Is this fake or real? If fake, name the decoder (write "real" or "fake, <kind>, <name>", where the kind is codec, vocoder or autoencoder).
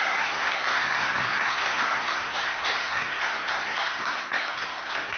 fake, codec, SNAC